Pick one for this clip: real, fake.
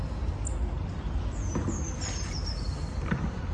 real